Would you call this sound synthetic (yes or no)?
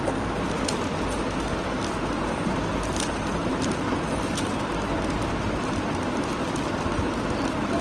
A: no